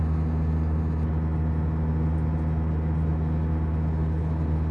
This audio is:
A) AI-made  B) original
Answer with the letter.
B